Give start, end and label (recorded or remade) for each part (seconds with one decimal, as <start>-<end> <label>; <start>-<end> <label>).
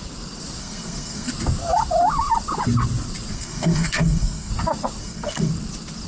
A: 0.0-0.6 recorded; 0.6-1.3 remade; 1.3-3.3 recorded; 3.3-4.5 remade; 4.5-5.0 recorded; 5.0-5.5 remade; 5.5-6.1 recorded